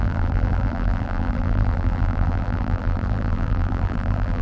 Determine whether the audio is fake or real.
fake